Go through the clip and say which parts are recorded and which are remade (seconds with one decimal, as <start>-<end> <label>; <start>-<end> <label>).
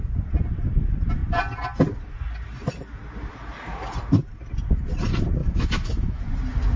0.0-5.4 recorded; 5.4-6.2 remade; 6.2-6.8 recorded